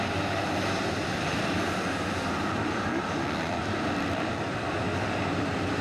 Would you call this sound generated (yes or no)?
no